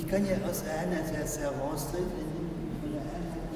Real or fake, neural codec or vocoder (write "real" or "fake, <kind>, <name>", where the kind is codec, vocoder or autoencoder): real